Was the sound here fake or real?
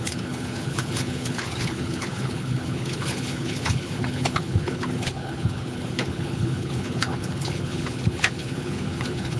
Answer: fake